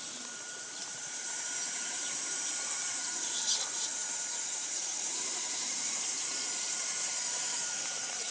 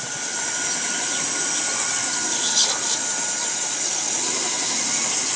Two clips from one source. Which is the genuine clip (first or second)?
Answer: second